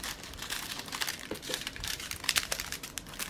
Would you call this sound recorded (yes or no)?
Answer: yes